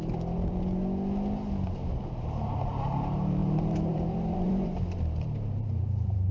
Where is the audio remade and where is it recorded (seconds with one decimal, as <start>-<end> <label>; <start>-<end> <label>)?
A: 0.0-3.4 recorded; 3.4-6.3 remade